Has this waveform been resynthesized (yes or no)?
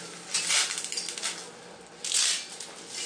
no